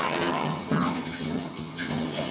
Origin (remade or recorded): remade